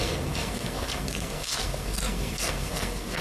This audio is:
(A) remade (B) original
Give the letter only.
A